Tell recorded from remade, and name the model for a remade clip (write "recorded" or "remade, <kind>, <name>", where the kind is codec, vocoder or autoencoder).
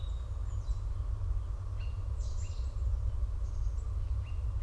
recorded